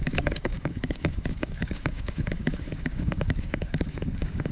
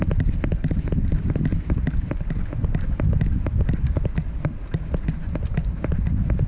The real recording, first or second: second